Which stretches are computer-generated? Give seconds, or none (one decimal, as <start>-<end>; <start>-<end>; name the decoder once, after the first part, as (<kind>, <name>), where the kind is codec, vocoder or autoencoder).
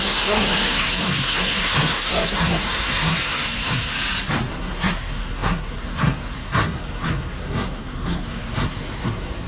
0.0-3.9 (codec, SNAC); 4.5-9.5